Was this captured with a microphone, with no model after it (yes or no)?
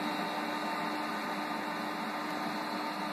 yes